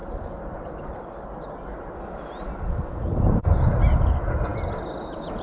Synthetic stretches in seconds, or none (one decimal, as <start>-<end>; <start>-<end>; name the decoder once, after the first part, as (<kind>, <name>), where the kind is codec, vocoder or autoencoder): none

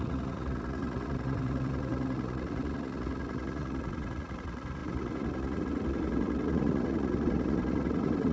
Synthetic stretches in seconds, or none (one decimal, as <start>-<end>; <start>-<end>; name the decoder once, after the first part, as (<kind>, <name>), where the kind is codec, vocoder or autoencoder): 0.0-8.3 (vocoder, Vocos)

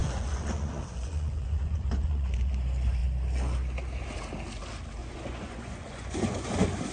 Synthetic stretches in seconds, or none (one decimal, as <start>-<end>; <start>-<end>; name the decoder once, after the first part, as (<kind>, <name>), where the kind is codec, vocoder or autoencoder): 0.0-2.5 (vocoder, Vocos); 5.0-6.5

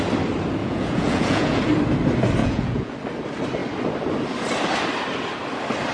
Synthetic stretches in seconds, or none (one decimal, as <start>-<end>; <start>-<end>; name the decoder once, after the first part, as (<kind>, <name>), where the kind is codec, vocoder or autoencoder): 0.6-1.6 (vocoder, Vocos); 2.4-2.9

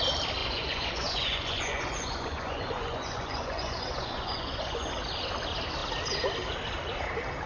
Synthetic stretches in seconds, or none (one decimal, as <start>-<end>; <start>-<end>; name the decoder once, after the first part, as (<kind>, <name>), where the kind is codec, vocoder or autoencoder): 0.4-4.9 (vocoder, Vocos)